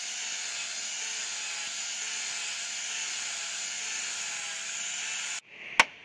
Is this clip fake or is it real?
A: real